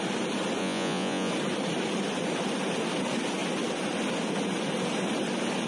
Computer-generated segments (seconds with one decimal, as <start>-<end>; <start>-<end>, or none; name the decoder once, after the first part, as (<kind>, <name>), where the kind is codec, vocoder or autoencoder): 0.6-1.3 (vocoder, Vocos)

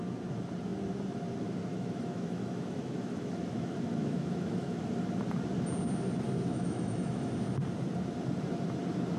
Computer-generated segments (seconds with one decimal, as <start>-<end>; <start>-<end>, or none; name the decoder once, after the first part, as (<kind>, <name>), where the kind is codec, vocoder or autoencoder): 1.7-4.8 (autoencoder, DAC-VAE); 6.5-7.3

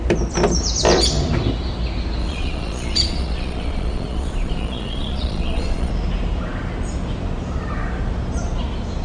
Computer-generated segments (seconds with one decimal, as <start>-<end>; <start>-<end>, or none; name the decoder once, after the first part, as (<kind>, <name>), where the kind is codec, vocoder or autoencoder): 2.2-5.9 (vocoder, Vocos)